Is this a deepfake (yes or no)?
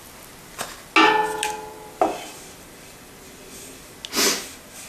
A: no